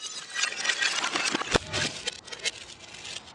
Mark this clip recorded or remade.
recorded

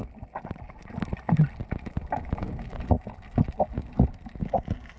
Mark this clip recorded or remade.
recorded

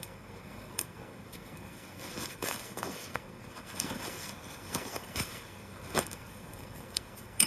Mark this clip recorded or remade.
remade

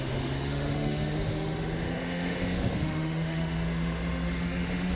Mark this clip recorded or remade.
remade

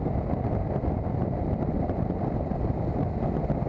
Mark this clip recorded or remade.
recorded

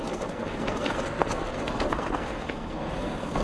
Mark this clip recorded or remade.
remade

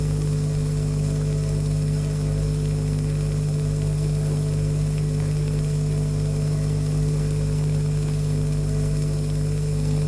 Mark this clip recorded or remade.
remade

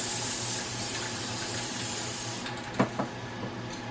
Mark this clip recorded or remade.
recorded